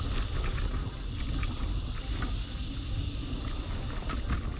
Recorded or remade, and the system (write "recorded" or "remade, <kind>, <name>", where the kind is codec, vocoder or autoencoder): recorded